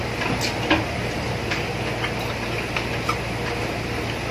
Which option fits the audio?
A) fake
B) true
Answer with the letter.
B